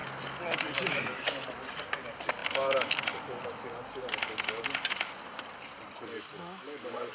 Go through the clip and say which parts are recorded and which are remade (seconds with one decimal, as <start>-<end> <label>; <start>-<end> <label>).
0.0-7.1 recorded